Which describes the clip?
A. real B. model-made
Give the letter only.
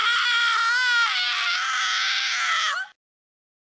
A